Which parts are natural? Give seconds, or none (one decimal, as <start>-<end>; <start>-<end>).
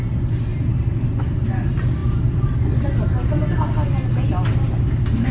0.0-0.5; 1.2-5.3